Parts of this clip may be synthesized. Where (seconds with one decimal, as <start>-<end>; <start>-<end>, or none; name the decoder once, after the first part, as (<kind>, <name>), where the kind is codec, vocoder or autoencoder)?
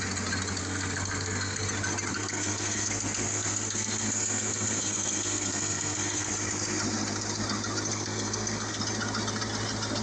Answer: 0.6-1.6 (codec, SNAC); 2.1-6.3; 7.9-8.8